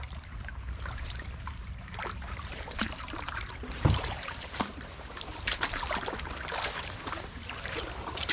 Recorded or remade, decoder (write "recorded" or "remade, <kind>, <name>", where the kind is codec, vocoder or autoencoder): remade, vocoder, BigVGAN v2